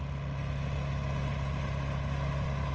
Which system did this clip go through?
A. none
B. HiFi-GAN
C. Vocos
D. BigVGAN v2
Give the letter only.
A